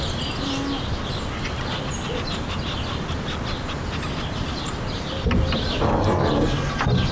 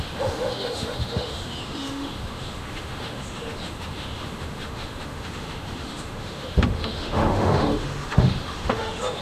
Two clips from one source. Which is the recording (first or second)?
first